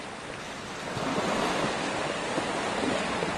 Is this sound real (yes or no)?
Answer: yes